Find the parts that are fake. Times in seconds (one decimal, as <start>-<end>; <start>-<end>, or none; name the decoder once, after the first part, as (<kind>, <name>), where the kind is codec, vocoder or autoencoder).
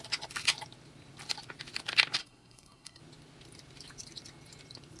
2.2-3.0 (codec, SNAC)